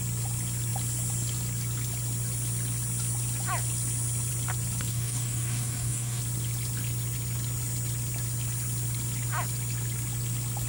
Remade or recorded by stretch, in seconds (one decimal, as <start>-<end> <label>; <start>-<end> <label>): 0.0-4.9 recorded; 4.9-6.2 remade; 6.2-10.7 recorded